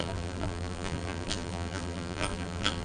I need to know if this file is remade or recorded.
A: remade